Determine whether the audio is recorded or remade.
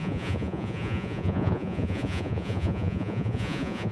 remade